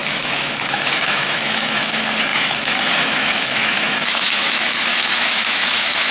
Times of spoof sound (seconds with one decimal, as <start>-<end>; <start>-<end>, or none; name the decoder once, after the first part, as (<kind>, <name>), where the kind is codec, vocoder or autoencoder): 0.0-1.8 (autoencoder, DAC-VAE); 2.3-6.1